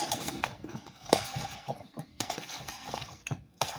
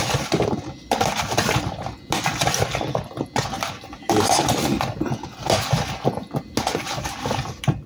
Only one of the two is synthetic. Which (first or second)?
first